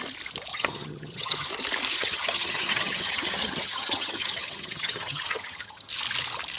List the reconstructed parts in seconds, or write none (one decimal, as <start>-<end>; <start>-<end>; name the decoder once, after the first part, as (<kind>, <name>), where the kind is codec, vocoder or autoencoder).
0.5-1.5 (vocoder, HiFi-GAN); 1.9-5.9